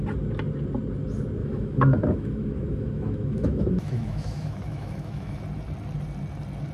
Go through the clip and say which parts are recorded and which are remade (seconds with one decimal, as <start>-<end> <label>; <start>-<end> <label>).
0.0-1.4 recorded; 1.4-5.4 remade; 5.4-6.7 recorded

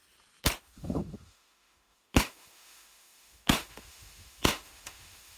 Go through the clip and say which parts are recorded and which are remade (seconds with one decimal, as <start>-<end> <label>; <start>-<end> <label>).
0.0-0.6 recorded; 0.6-5.4 remade

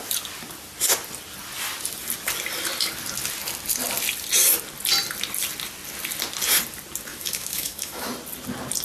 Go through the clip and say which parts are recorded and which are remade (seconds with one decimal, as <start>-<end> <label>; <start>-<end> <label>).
0.0-7.1 recorded; 7.1-8.1 remade; 8.1-8.8 recorded

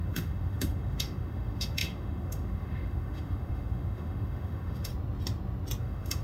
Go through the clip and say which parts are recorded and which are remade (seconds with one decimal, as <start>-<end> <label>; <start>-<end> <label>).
0.0-4.9 remade; 4.9-5.8 recorded; 5.8-6.2 remade

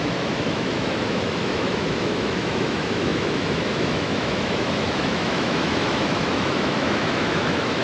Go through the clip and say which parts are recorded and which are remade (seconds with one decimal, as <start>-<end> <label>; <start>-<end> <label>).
0.0-7.8 remade